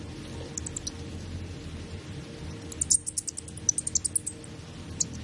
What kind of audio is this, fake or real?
real